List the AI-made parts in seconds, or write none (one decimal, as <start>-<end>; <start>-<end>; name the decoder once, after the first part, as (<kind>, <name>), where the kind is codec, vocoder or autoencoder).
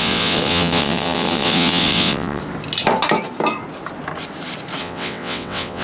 0.0-2.4 (vocoder, WaveNeXt); 4.8-5.8